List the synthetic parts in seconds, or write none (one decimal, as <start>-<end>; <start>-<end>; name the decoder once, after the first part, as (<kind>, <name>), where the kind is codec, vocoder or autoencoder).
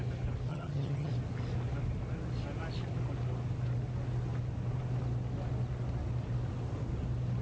0.5-1.1 (vocoder, HiFi-GAN)